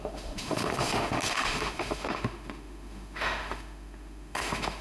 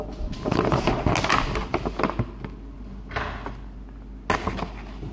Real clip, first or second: second